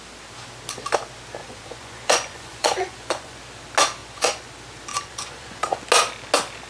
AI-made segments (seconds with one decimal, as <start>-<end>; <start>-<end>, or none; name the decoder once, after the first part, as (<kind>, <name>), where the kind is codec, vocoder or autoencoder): 1.4-3.4 (vocoder, Vocos); 4.0-4.5; 4.9-5.8